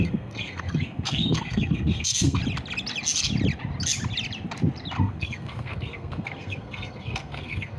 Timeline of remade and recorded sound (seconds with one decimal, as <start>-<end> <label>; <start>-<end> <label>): 0.0-2.4 remade; 2.4-5.0 recorded; 5.0-7.8 remade